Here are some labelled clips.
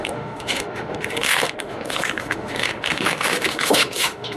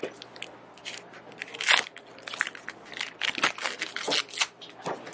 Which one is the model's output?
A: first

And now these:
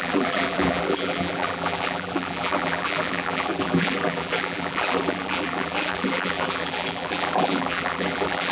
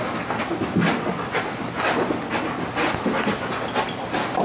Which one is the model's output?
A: first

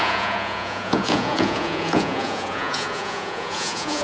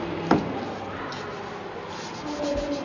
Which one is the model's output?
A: first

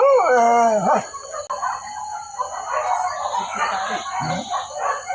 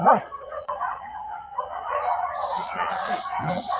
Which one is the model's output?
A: second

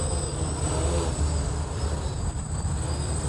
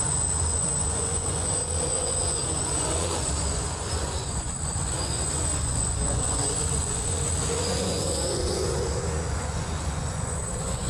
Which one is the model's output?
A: second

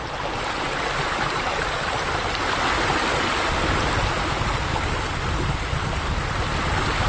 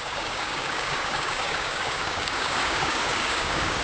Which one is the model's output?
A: second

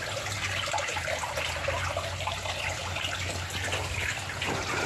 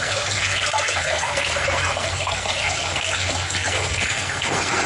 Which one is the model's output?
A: second